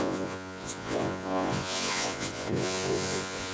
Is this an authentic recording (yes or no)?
no